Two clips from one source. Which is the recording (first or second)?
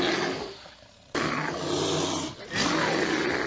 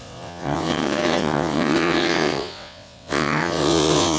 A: first